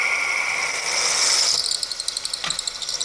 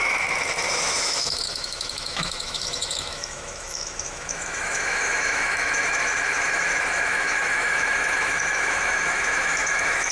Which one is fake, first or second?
second